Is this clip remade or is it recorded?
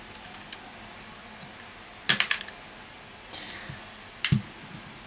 recorded